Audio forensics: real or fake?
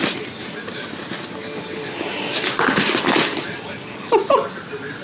real